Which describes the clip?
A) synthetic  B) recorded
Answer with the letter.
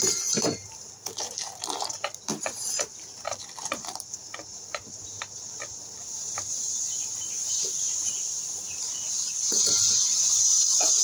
A